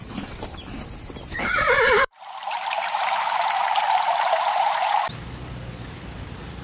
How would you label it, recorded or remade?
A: remade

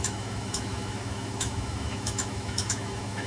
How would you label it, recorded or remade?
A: remade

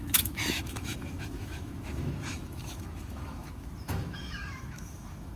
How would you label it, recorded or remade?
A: remade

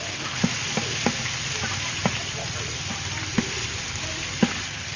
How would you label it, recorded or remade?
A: remade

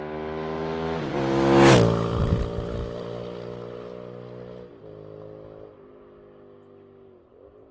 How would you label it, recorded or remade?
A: recorded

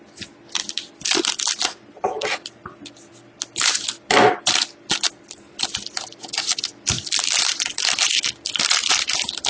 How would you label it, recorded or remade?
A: recorded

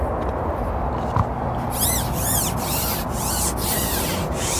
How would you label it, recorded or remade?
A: recorded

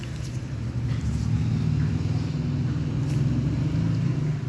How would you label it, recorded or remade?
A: recorded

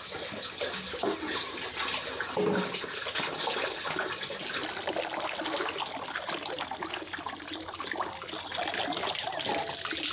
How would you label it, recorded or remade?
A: recorded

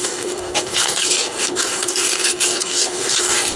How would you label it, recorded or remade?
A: remade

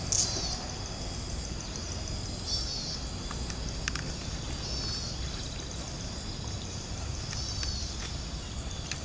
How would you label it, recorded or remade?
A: recorded